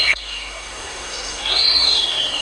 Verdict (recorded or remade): remade